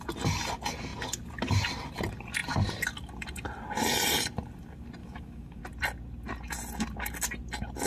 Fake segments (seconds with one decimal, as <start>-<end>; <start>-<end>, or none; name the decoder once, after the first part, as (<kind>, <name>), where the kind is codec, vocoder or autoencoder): 5.0-5.6 (autoencoder, DAC-VAE)